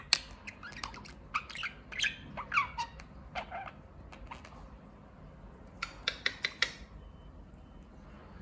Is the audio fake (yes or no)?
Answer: no